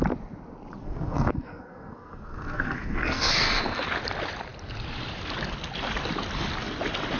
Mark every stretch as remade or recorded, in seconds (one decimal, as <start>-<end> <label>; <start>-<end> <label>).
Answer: 0.0-0.8 recorded; 0.8-3.8 remade; 3.8-7.2 recorded